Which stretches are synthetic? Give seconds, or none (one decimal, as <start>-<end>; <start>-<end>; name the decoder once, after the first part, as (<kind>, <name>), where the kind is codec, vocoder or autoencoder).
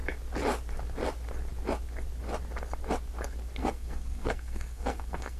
3.6-5.4 (codec, SNAC)